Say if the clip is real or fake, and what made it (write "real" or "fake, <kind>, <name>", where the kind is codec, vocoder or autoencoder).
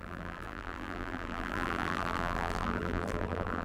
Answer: fake, vocoder, BigVGAN v2